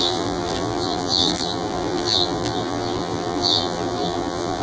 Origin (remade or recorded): remade